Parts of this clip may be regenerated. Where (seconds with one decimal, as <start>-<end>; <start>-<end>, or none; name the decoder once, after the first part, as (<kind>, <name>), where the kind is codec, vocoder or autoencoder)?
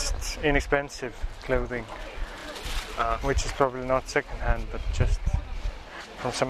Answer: 0.0-0.6 (vocoder, BigVGAN v2); 1.1-1.7